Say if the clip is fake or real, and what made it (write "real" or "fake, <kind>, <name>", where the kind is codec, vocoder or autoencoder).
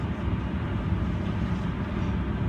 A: real